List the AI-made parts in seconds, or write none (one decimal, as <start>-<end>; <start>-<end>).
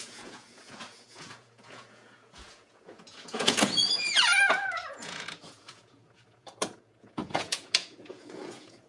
0.0-4.3; 4.9-8.9